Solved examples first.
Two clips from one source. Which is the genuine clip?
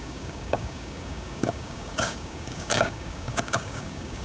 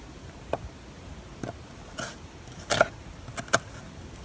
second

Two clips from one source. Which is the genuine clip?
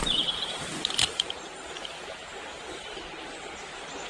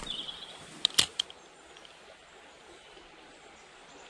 second